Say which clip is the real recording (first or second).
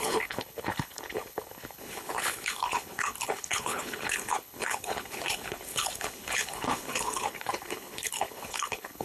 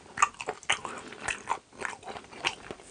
second